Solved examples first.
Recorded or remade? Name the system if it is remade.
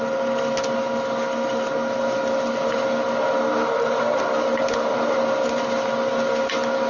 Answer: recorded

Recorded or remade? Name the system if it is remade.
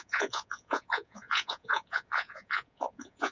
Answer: remade, vocoder, Vocos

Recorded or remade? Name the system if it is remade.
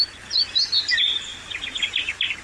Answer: recorded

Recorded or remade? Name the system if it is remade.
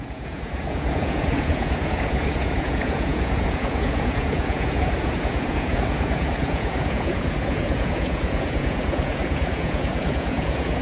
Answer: remade, vocoder, Vocos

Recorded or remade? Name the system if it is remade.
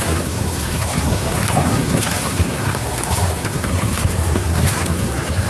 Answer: remade, codec, SNAC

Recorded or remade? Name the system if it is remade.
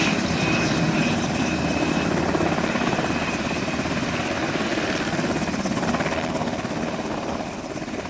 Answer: remade, vocoder, BigVGAN v2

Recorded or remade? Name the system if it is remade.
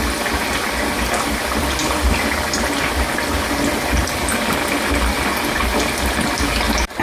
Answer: recorded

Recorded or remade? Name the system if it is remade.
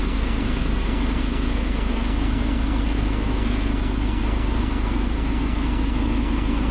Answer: remade, codec, SNAC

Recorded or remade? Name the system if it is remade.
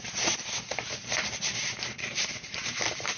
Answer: remade, vocoder, BigVGAN v2